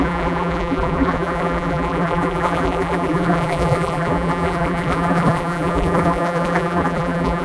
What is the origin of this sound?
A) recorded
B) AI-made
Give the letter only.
B